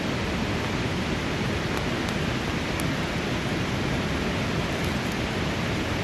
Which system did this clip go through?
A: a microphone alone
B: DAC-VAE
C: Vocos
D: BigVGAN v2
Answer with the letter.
A